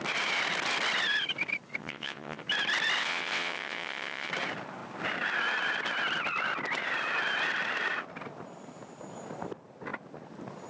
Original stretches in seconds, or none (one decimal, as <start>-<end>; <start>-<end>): 0.0-1.8; 2.4-3.0; 4.3-10.7